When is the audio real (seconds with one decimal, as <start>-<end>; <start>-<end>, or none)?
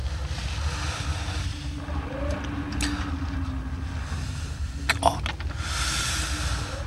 0.0-6.9